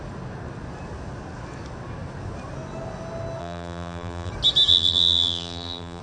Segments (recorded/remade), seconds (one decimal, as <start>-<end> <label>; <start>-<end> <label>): 0.0-3.4 recorded; 3.4-4.3 remade; 4.3-4.7 recorded; 4.7-6.0 remade